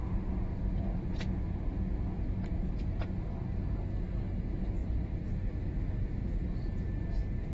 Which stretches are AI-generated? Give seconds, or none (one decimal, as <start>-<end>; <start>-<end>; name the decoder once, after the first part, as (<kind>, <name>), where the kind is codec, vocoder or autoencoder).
4.8-5.8 (vocoder, BigVGAN v2)